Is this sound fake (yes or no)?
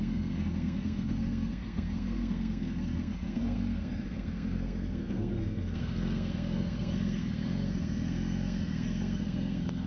yes